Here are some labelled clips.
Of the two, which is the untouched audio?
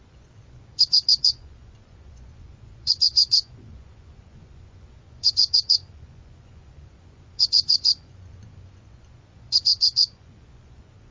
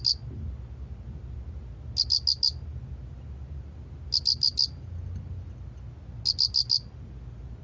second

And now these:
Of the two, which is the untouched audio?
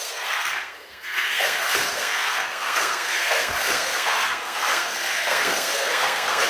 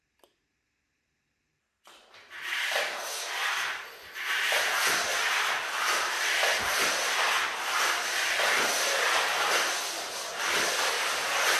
second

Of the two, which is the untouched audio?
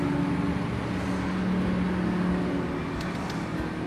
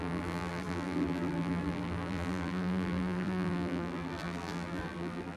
first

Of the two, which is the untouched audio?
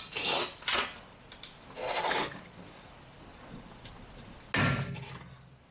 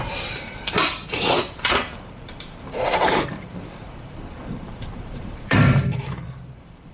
first